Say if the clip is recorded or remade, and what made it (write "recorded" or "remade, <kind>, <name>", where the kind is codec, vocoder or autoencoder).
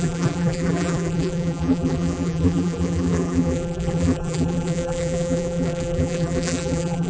remade, vocoder, BigVGAN v2